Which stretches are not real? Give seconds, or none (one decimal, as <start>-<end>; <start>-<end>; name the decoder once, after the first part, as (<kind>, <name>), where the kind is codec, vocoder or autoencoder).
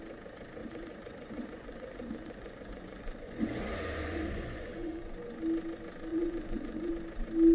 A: 0.6-5.1 (vocoder, Vocos); 6.1-6.9